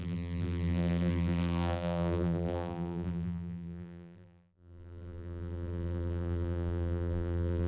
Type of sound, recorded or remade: remade